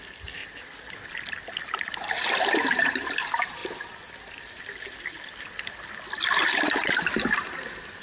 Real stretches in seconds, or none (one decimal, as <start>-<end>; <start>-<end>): 0.0-8.0